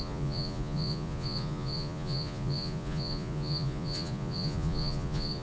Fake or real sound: fake